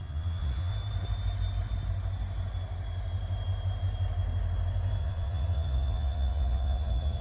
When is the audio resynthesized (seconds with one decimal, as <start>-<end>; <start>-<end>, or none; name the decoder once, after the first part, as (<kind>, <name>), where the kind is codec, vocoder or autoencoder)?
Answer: 0.0-0.7 (vocoder, Vocos); 5.0-7.2